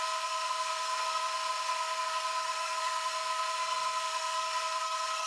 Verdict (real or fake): fake